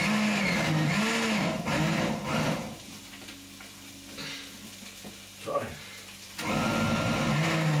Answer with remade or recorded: recorded